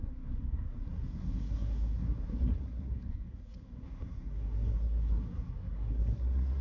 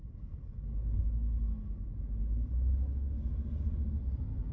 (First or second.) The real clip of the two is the second